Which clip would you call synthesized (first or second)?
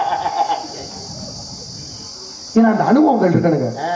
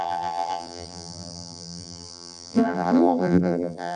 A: second